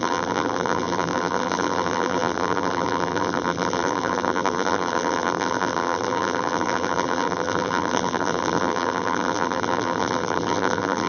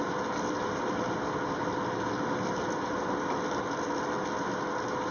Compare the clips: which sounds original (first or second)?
second